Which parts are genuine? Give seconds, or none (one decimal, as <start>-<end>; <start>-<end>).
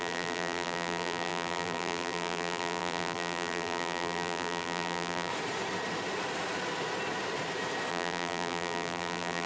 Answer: 5.3-7.9